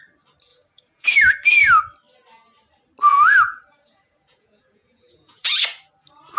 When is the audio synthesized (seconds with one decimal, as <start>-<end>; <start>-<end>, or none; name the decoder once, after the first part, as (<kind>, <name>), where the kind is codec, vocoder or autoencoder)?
0.5-1.1 (vocoder, Vocos); 3.1-5.6